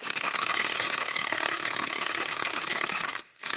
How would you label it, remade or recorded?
remade